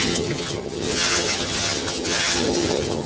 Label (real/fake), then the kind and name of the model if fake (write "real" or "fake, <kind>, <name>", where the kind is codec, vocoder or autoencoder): fake, vocoder, HiFi-GAN